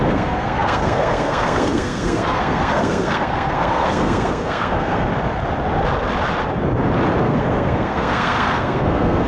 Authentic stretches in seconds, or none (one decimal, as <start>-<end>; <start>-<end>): 5.1-7.2